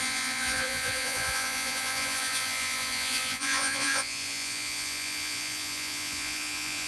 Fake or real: fake